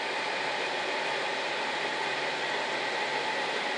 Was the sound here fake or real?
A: fake